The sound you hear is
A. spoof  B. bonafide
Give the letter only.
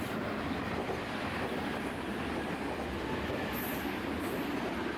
B